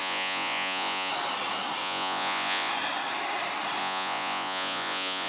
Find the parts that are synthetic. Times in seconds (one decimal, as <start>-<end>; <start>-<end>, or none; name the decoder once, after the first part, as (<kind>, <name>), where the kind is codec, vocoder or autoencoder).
0.0-1.1 (vocoder, Vocos); 1.8-2.7; 3.8-5.3